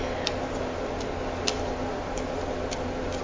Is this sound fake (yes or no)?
no